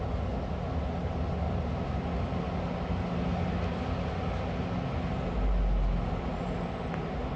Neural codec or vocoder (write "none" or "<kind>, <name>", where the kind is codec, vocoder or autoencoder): none